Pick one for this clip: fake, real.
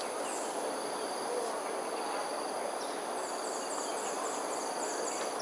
real